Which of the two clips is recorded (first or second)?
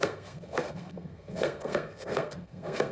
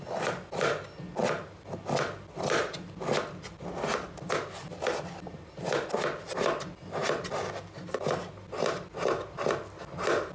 second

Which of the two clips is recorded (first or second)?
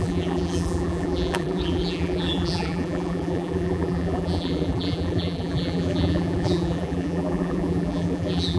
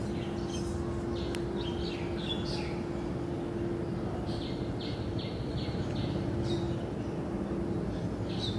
second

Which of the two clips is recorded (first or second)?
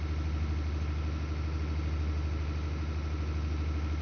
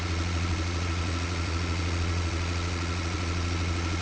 first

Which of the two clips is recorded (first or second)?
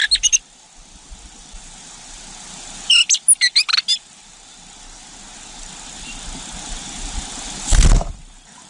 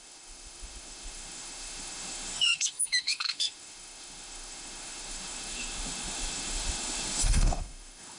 first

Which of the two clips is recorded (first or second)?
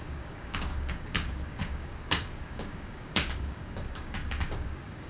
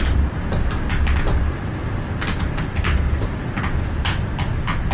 second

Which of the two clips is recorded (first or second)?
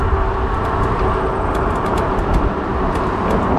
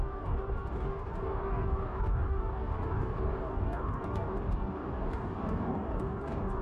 first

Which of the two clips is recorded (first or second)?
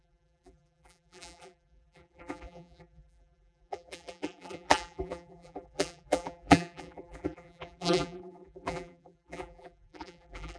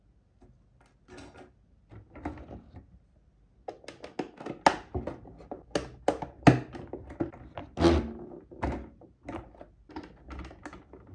second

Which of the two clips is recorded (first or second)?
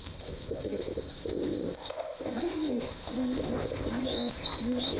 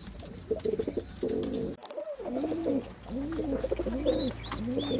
second